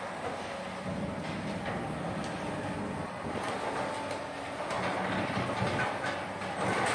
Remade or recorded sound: recorded